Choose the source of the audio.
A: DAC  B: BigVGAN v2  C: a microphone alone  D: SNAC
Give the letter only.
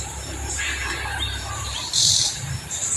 B